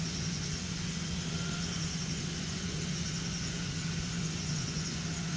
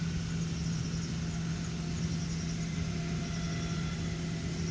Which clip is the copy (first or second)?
first